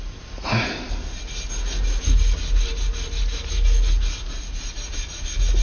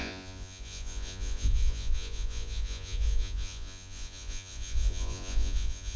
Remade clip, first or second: second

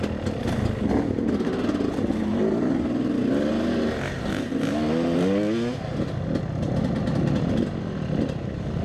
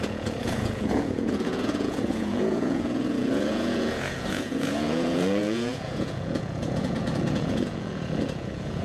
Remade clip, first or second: second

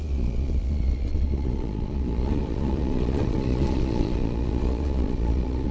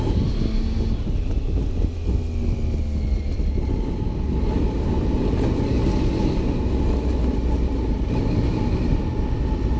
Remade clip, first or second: first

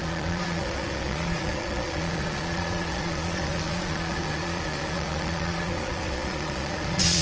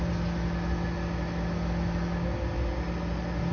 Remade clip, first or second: first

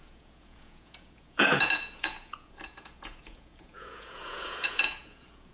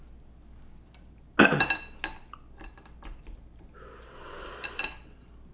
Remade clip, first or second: first